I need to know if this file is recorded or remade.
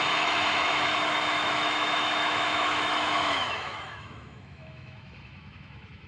remade